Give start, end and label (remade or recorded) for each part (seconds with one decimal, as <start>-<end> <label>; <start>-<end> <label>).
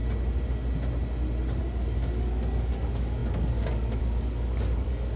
0.0-1.6 recorded; 1.6-5.2 remade